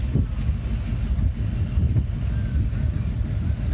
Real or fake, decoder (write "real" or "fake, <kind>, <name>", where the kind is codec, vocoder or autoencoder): real